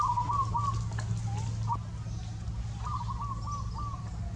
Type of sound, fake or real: real